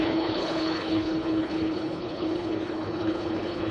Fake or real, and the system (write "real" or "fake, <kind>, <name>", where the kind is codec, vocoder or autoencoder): fake, codec, HILCodec